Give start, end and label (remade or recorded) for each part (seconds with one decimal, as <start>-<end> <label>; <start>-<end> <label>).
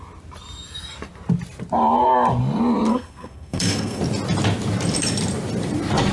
0.0-2.9 recorded; 2.9-4.0 remade; 4.0-6.1 recorded